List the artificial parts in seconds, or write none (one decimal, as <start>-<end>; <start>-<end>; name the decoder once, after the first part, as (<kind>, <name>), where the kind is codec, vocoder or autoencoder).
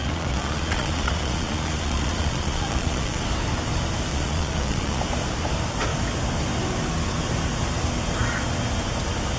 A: 0.0-3.2 (vocoder, Vocos); 4.1-5.0